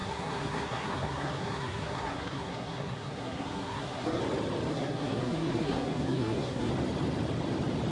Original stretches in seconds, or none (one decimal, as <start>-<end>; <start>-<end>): 4.2-4.7; 6.7-7.9